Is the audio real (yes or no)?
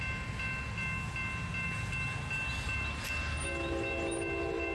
yes